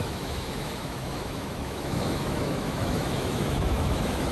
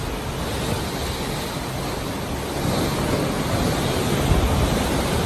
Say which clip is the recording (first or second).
second